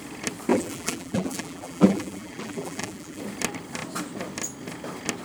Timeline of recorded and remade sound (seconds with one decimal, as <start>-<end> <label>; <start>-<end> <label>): 0.0-0.5 recorded; 0.5-3.2 remade; 3.2-5.2 recorded